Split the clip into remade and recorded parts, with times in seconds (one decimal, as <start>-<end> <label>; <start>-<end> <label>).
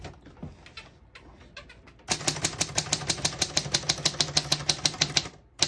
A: 0.0-5.7 recorded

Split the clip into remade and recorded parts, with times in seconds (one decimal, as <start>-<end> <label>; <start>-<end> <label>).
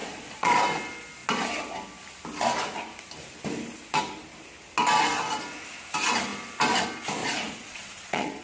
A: 0.0-0.6 remade; 0.6-7.2 recorded; 7.2-8.4 remade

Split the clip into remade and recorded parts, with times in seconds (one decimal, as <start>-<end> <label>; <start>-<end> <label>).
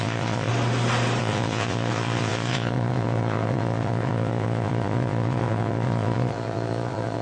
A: 0.0-0.5 remade; 0.5-1.2 recorded; 1.2-7.2 remade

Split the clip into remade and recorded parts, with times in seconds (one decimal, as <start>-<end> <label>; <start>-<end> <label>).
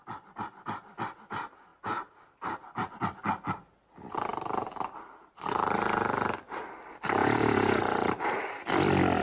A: 0.0-7.2 recorded; 7.2-7.8 remade; 7.8-9.2 recorded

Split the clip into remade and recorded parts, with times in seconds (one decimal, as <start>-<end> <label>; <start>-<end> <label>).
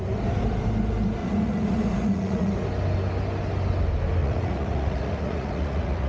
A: 0.0-1.2 recorded; 1.2-2.5 remade; 2.5-4.2 recorded; 4.2-6.1 remade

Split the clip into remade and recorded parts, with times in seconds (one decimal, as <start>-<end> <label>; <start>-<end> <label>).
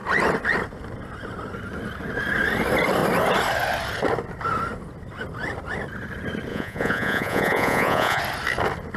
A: 0.0-6.5 recorded; 6.5-8.2 remade; 8.2-9.0 recorded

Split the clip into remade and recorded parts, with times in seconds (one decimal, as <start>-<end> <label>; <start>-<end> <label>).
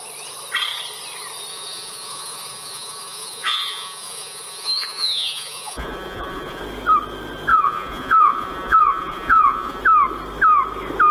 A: 0.0-1.5 recorded; 1.5-6.6 remade; 6.6-7.5 recorded; 7.5-9.8 remade; 9.8-11.1 recorded